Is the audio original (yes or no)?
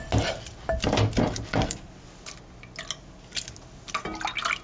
yes